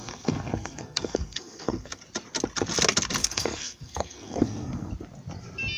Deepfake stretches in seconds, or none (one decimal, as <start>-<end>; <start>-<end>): 0.0-2.0; 3.2-4.9